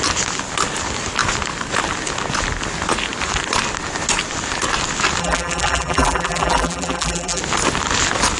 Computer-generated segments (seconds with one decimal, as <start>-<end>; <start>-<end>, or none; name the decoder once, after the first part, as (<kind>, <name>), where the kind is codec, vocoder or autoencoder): 5.2-7.4 (vocoder, BigVGAN v2)